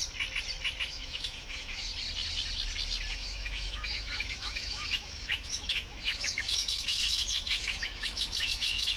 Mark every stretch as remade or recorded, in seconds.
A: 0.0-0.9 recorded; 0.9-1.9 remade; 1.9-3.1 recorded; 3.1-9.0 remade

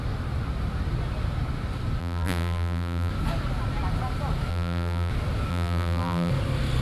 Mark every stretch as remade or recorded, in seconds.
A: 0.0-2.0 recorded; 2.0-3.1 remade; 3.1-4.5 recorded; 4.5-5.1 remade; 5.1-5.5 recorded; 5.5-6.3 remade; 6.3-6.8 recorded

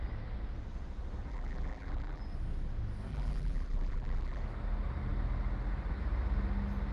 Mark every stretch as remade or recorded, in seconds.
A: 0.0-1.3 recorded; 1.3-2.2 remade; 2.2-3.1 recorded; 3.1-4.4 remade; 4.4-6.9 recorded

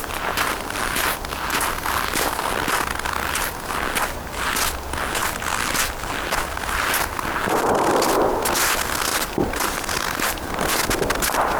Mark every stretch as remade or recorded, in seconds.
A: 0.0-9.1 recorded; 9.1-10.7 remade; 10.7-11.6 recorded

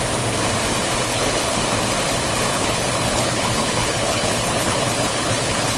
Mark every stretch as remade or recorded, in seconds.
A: 0.0-1.1 recorded; 1.1-1.6 remade; 1.6-2.5 recorded; 2.5-5.8 remade

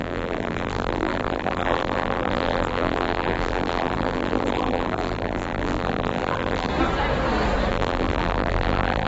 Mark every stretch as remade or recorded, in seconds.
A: 0.0-6.7 remade; 6.7-7.7 recorded; 7.7-9.1 remade

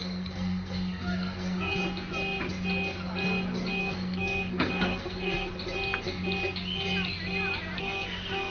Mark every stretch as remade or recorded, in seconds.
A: 0.0-1.8 remade; 1.8-3.8 recorded; 3.8-5.5 remade; 5.5-7.8 recorded; 7.8-8.5 remade

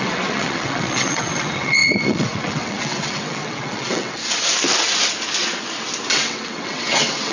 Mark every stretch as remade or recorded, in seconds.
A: 0.0-4.2 remade; 4.2-6.1 recorded; 6.1-7.3 remade